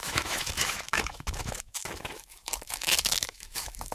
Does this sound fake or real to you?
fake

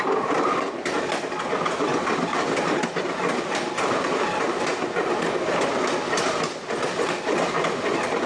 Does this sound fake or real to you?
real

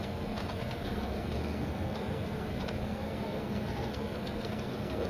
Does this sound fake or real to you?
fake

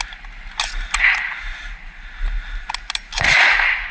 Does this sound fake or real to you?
real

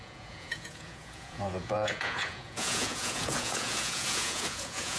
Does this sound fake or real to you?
fake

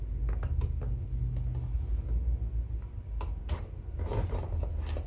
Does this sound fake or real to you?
real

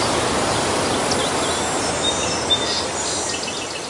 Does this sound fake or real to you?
real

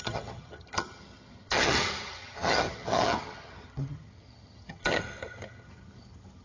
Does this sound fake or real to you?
fake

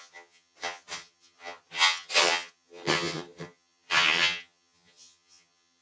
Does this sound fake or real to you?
fake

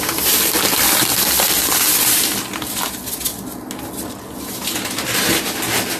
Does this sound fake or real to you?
real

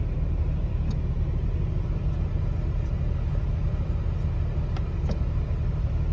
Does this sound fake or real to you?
real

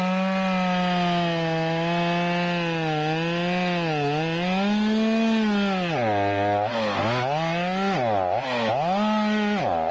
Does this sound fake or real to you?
real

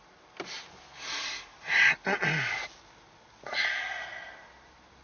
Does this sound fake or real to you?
real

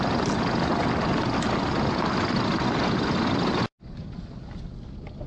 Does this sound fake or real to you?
real